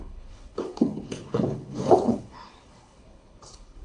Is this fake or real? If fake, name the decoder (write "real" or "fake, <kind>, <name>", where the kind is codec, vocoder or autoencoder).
fake, codec, HILCodec